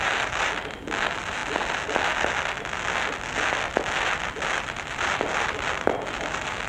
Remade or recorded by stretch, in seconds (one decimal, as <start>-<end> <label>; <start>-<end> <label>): 0.0-1.4 remade; 1.4-4.3 recorded; 4.3-6.7 remade